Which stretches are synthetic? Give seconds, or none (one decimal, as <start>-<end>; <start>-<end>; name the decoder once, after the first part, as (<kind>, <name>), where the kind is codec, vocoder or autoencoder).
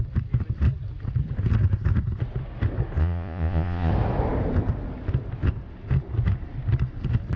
3.0-3.9 (vocoder, Vocos)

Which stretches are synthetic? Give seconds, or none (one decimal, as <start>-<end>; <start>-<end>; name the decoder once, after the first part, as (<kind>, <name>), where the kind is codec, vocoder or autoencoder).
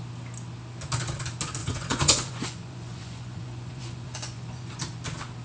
1.6-4.8 (vocoder, Vocos)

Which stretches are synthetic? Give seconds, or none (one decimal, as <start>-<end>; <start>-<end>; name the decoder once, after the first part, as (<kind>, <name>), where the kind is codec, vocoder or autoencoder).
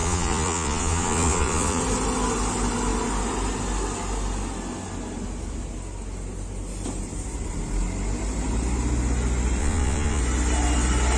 0.0-1.8 (vocoder, Vocos); 9.6-10.2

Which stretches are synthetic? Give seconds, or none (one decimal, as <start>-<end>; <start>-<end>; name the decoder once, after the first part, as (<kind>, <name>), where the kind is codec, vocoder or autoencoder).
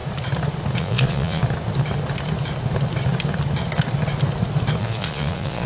0.8-1.4 (vocoder, Vocos); 4.8-5.7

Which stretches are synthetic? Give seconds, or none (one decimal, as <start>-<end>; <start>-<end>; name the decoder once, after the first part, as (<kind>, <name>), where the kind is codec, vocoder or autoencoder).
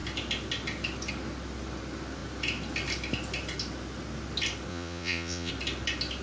4.7-5.5 (vocoder, Vocos)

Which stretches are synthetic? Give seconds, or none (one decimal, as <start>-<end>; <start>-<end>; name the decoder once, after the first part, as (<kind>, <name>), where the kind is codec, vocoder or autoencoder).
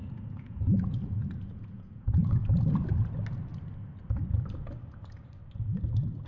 0.0-2.7 (vocoder, Vocos)